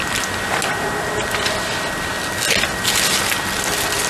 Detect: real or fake real